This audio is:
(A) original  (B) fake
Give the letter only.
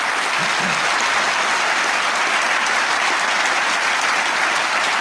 A